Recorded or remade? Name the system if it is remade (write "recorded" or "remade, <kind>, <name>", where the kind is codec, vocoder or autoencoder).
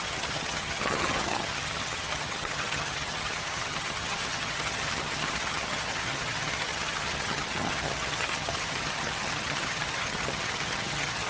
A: remade, vocoder, HiFi-GAN